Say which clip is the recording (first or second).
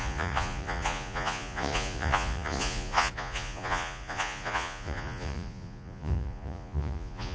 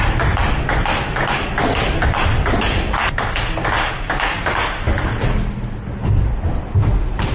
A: second